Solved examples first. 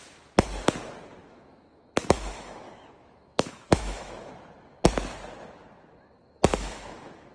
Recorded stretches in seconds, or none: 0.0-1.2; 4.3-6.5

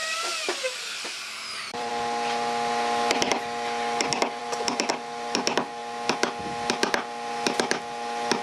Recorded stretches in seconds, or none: 1.9-4.4; 4.9-8.4

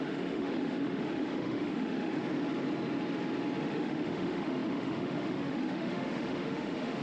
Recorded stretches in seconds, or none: 2.2-3.6

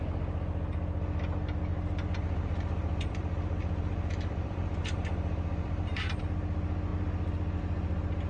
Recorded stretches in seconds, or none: 0.0-1.7; 6.2-6.9; 7.6-8.3